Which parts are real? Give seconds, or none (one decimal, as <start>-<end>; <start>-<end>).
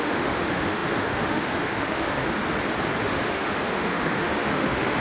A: 2.4-3.0